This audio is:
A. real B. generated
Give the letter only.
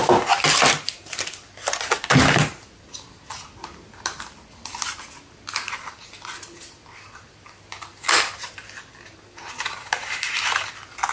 A